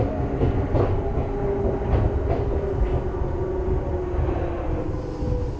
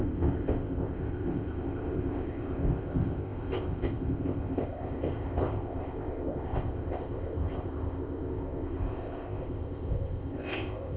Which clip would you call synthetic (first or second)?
second